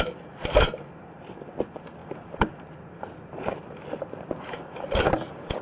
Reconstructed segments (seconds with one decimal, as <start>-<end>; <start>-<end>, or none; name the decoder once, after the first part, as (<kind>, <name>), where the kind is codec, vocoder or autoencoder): 0.4-1.4 (vocoder, BigVGAN v2); 2.0-3.6